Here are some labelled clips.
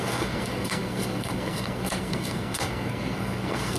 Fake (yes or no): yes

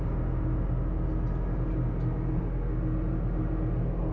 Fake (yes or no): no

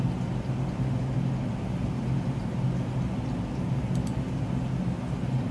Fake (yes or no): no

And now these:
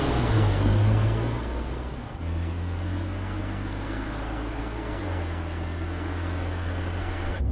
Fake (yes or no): yes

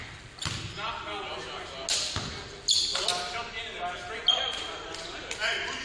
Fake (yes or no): no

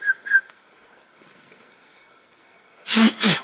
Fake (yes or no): yes